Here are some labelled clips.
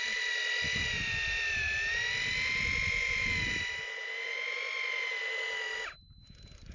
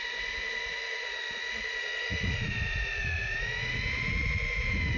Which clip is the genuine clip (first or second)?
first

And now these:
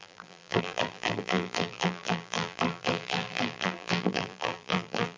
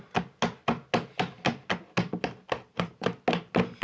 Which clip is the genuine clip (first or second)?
second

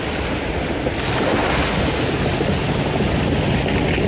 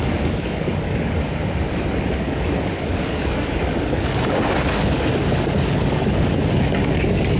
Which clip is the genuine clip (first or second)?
first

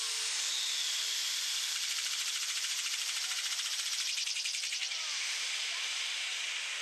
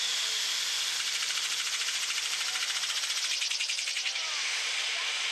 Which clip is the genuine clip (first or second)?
second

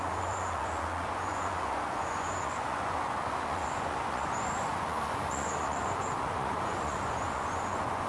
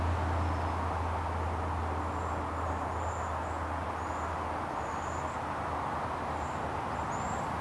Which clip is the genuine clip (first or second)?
second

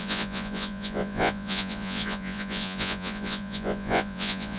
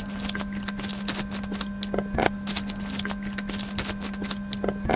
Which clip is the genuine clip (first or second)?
second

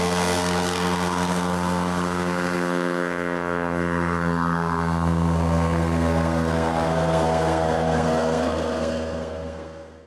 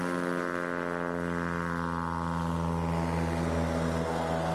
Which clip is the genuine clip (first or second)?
second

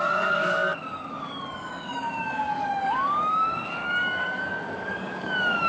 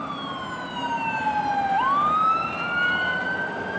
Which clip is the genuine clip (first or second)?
second